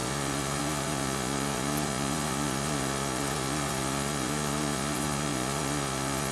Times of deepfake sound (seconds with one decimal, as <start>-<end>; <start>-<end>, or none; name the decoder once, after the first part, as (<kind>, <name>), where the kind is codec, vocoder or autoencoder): 0.0-6.3 (vocoder, Vocos)